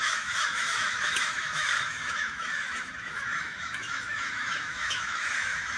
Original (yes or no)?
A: no